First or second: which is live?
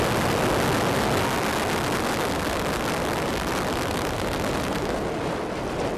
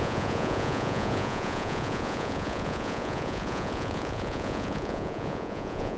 first